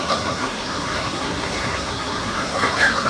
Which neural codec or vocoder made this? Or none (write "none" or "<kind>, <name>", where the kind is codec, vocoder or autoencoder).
codec, SNAC